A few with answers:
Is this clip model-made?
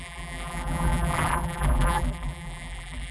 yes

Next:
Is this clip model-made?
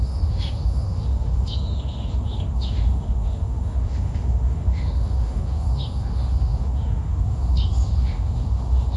yes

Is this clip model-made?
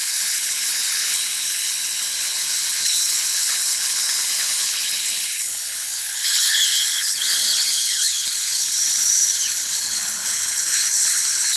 yes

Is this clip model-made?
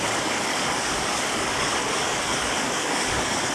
yes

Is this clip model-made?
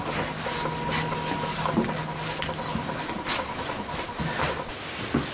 no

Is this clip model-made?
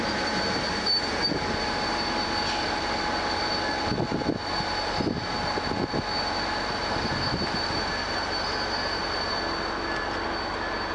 no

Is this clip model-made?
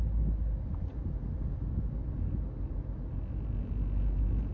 no